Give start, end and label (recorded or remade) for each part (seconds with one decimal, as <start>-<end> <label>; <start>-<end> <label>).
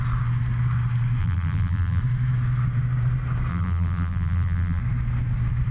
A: 0.0-1.2 recorded; 1.2-2.0 remade; 2.0-3.5 recorded; 3.5-4.8 remade; 4.8-5.7 recorded